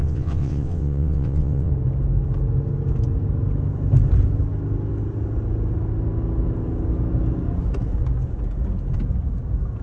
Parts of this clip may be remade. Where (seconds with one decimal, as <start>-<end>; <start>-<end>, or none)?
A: 0.0-1.7